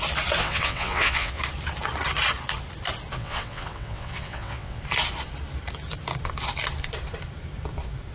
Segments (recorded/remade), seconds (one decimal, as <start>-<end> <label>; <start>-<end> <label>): 0.0-0.4 recorded; 0.4-1.4 remade; 1.4-3.2 recorded; 3.2-4.8 remade; 4.8-8.1 recorded